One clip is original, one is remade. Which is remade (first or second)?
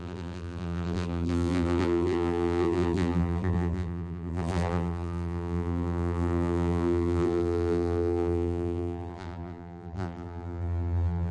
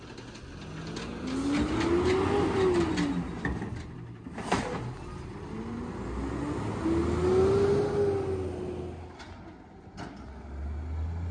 first